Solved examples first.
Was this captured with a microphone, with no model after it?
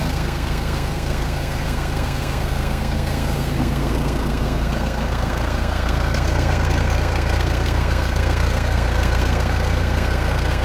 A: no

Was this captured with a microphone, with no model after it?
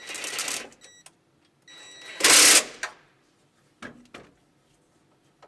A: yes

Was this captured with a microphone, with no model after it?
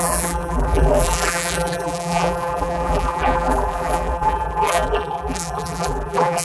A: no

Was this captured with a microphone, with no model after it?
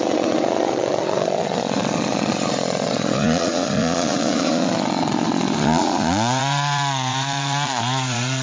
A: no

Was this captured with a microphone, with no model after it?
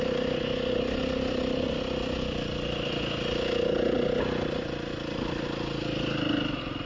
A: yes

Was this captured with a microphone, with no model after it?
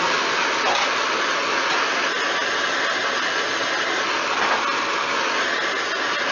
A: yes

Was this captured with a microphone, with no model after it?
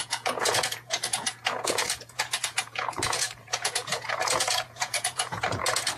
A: no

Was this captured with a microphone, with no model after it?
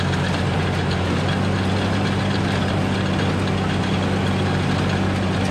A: yes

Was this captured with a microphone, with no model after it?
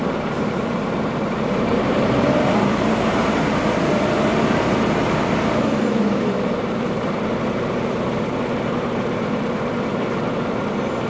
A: no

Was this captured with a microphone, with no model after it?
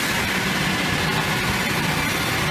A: yes